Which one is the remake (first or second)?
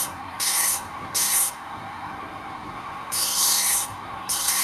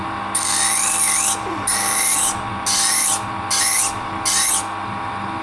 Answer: first